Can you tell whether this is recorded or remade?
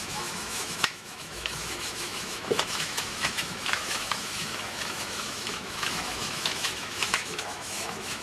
remade